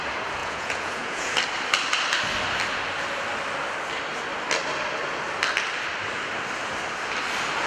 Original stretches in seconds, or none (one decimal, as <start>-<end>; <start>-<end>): 0.0-0.4; 1.3-7.7